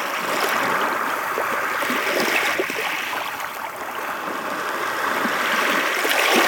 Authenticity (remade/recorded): recorded